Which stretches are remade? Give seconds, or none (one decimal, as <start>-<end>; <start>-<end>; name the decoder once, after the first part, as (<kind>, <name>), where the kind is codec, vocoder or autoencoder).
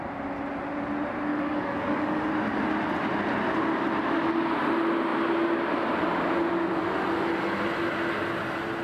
1.3-2.3 (codec, DAC)